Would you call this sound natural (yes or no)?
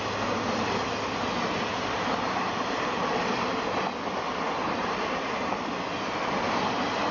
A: yes